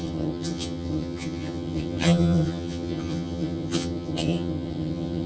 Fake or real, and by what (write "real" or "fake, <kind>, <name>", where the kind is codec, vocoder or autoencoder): fake, vocoder, HiFi-GAN